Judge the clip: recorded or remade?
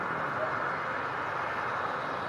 recorded